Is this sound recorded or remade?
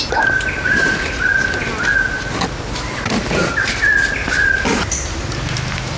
recorded